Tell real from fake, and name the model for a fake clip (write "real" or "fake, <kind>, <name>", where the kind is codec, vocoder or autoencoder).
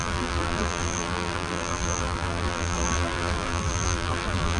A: fake, vocoder, BigVGAN v2